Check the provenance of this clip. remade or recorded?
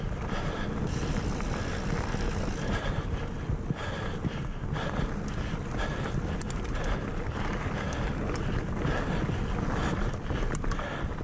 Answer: recorded